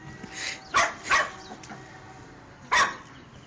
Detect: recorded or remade recorded